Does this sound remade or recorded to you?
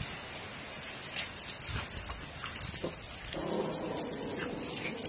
recorded